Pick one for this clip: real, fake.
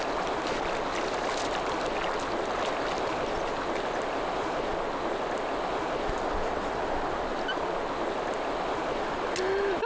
real